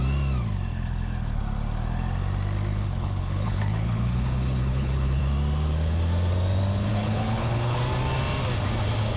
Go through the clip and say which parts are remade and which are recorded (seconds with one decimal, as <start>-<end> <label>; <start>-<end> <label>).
0.0-0.7 recorded; 0.7-1.4 remade; 1.4-2.7 recorded; 2.7-5.2 remade; 5.2-6.9 recorded; 6.9-7.8 remade; 7.8-9.2 recorded